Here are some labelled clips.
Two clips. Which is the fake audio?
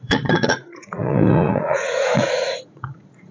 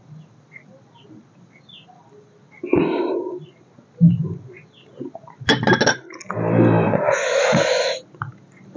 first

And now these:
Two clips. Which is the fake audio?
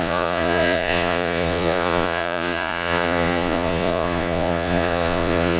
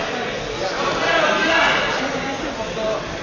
first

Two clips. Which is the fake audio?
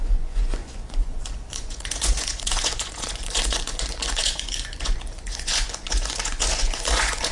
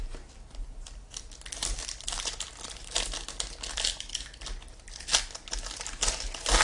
first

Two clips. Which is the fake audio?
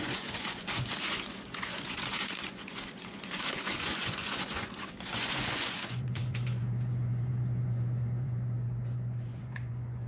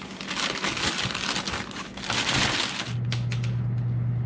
first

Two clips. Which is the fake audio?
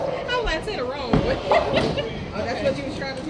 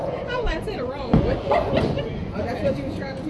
second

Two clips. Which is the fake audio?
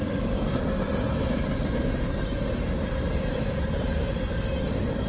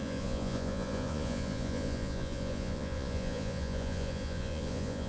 second